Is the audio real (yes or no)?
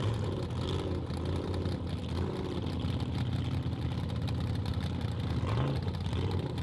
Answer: yes